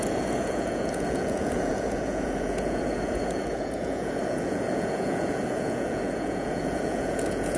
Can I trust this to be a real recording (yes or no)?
no